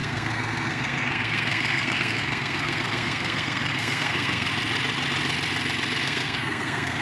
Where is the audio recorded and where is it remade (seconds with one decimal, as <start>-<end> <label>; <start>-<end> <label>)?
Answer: 0.0-4.5 remade; 4.5-6.0 recorded; 6.0-7.0 remade